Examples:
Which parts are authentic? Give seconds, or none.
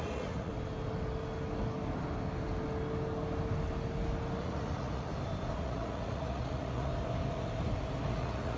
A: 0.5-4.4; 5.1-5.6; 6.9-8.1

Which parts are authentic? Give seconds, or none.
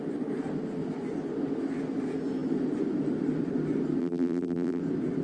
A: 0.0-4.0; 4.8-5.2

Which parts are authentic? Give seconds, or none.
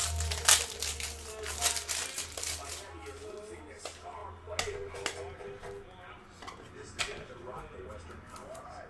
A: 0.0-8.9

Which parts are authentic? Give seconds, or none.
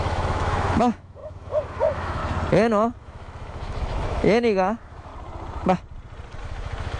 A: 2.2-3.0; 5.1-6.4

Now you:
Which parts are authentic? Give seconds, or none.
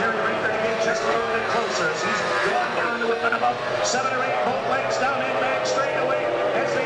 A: 0.0-0.7; 1.5-2.5; 3.5-6.9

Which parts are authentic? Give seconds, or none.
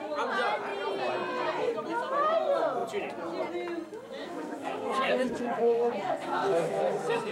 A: 0.0-4.2